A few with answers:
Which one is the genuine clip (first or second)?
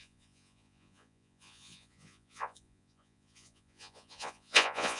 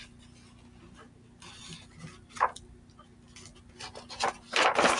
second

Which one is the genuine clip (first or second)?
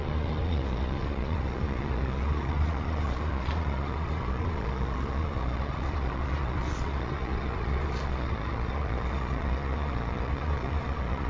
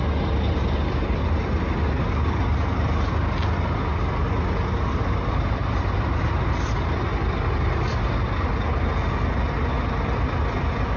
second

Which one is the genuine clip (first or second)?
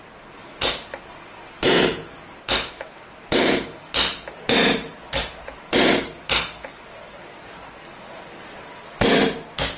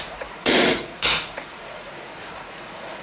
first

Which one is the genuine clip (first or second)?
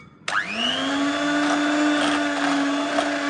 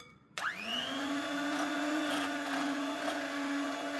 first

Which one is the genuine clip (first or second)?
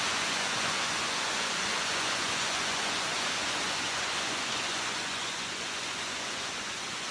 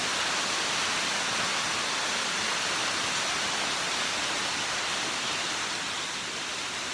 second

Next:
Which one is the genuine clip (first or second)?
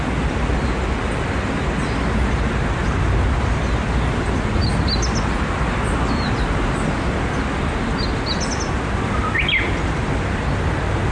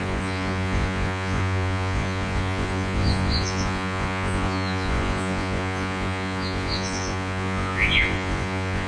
first